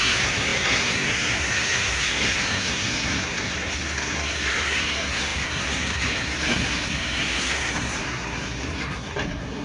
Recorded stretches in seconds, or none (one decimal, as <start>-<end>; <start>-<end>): none